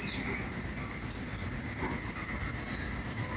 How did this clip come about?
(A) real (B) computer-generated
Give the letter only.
A